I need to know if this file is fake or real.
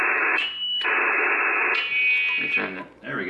real